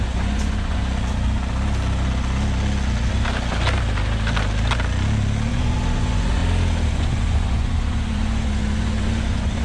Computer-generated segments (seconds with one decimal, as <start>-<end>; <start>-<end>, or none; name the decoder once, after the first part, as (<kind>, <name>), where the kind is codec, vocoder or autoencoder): 0.0-0.8 (vocoder, Vocos); 5.5-6.4; 6.9-9.6